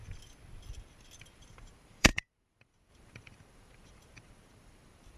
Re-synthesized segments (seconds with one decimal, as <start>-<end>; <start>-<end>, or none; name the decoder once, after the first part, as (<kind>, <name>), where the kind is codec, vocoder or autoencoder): 1.2-5.2 (vocoder, BigVGAN v2)

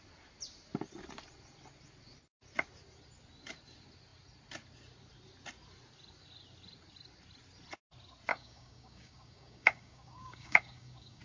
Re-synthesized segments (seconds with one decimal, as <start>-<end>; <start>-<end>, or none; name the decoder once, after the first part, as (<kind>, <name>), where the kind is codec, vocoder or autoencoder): 8.3-11.2 (codec, DAC)

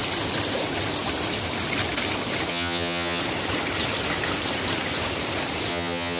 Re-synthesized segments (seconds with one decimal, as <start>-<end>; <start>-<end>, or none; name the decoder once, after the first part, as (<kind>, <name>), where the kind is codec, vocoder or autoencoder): 2.5-3.2 (vocoder, HiFi-GAN); 5.7-6.2

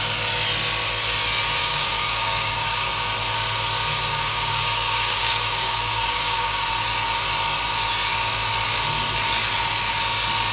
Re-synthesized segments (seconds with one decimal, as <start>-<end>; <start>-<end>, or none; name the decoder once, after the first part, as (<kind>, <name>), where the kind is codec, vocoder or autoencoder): 1.6-2.9 (codec, DAC); 4.1-6.7

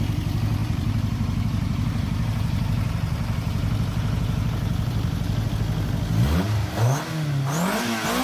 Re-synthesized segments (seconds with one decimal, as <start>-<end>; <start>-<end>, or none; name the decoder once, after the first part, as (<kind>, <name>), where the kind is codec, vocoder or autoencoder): 0.6-5.5 (vocoder, BigVGAN v2)

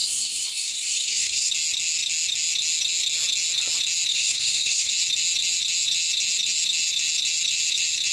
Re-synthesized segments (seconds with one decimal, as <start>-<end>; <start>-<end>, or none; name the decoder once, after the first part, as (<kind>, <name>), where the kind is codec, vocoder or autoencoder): 0.0-1.5 (codec, SNAC); 4.1-4.9

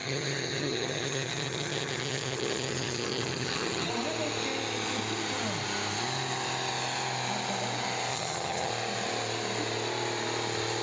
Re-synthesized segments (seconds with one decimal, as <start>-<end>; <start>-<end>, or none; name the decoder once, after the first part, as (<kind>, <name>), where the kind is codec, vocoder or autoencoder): 0.0-3.9 (vocoder, HiFi-GAN); 8.1-8.7